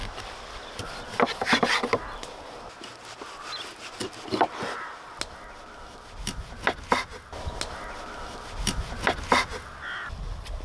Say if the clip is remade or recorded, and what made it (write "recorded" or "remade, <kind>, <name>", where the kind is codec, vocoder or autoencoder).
recorded